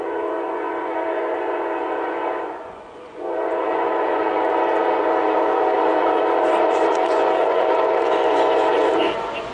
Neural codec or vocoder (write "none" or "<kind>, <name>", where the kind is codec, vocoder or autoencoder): vocoder, Vocos